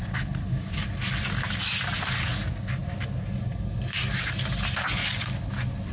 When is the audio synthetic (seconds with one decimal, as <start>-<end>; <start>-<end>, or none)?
none